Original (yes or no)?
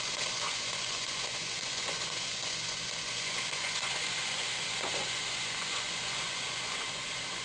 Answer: no